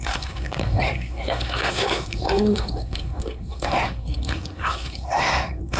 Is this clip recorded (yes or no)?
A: no